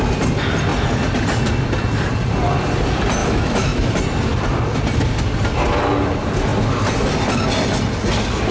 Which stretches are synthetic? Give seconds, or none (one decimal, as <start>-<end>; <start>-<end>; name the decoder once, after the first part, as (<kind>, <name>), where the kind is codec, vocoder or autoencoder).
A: 3.2-3.9 (autoencoder, DAC-VAE)